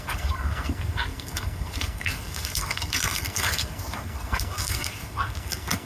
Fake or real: fake